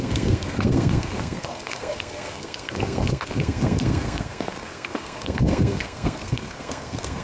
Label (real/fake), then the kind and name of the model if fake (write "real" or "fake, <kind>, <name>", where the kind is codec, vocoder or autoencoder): fake, codec, SNAC